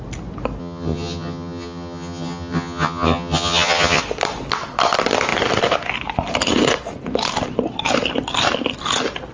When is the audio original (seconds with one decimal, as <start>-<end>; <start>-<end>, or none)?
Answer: 0.0-0.6; 4.0-9.3